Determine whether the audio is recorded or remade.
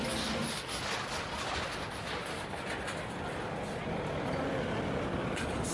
recorded